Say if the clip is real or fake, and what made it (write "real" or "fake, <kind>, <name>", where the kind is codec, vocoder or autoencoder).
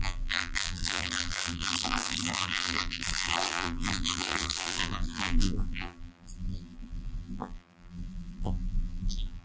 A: fake, vocoder, BigVGAN v2